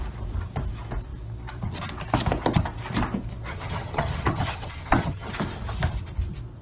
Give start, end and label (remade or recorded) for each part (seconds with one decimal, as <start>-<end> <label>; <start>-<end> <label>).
0.0-3.5 recorded; 3.5-5.3 remade; 5.3-6.6 recorded